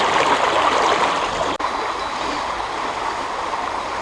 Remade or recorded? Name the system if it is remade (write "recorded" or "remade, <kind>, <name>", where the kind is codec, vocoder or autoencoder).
recorded